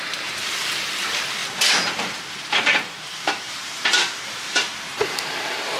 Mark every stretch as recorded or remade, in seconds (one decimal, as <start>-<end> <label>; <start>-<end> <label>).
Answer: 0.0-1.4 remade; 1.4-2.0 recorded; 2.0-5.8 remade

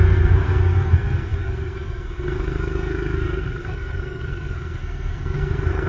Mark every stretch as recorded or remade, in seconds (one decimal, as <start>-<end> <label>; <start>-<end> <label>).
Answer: 0.0-5.9 remade

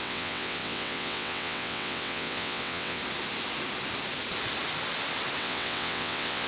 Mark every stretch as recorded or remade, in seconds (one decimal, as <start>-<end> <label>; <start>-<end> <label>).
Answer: 0.0-3.0 remade; 3.0-5.4 recorded; 5.4-6.5 remade

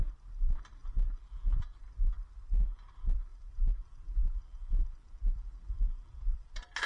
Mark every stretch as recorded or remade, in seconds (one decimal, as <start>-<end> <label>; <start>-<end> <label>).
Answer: 0.0-0.8 recorded; 0.8-1.8 remade; 1.8-3.3 recorded; 3.3-6.5 remade; 6.5-6.9 recorded

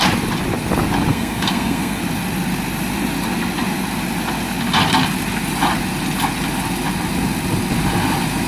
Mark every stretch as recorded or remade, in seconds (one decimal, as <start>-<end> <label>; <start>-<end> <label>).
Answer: 0.0-1.1 recorded; 1.1-2.0 remade; 2.0-8.5 recorded

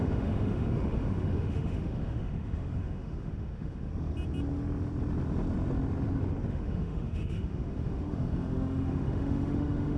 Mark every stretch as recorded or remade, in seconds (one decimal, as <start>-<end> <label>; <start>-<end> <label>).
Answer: 0.0-3.9 remade; 3.9-6.5 recorded; 6.5-10.0 remade

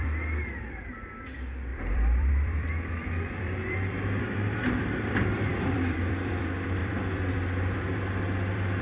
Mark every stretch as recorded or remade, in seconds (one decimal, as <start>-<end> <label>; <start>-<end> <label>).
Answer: 0.0-8.8 remade

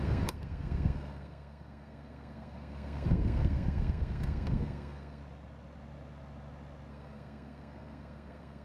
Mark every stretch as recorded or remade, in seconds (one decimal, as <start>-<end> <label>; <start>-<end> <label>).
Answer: 0.0-5.2 remade; 5.2-6.9 recorded; 6.9-8.6 remade